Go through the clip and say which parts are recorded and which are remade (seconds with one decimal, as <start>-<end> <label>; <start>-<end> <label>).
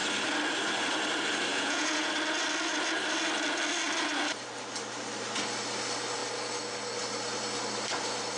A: 0.0-1.5 recorded; 1.5-2.1 remade; 2.1-8.4 recorded